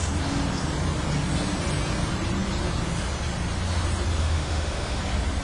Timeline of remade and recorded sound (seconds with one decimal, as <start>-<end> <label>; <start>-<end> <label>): 0.0-4.2 recorded; 4.2-5.0 remade; 5.0-5.4 recorded

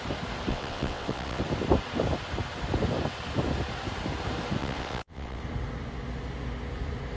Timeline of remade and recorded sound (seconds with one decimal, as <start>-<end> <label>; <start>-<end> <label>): 0.0-0.5 recorded; 0.5-1.4 remade; 1.4-4.6 recorded; 4.6-5.4 remade; 5.4-7.2 recorded

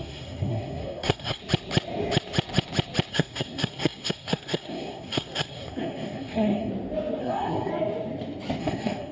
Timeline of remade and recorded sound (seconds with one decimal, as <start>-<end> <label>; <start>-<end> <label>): 0.0-1.4 remade; 1.4-3.1 recorded; 3.1-6.7 remade; 6.7-7.2 recorded; 7.2-7.7 remade; 7.7-8.6 recorded; 8.6-9.1 remade

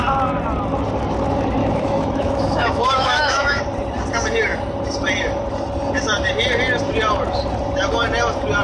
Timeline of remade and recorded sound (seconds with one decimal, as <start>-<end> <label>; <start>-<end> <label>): 0.0-1.6 recorded; 1.6-3.6 remade; 3.6-8.6 recorded

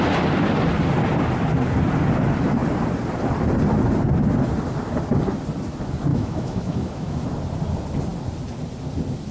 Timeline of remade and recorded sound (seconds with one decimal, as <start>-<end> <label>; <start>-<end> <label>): 0.0-6.1 recorded; 6.1-7.2 remade; 7.2-9.3 recorded

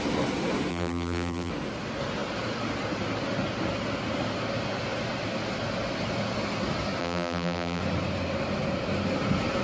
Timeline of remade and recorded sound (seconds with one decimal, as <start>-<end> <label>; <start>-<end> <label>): 0.0-0.7 recorded; 0.7-1.5 remade; 1.5-7.0 recorded; 7.0-7.8 remade; 7.8-9.6 recorded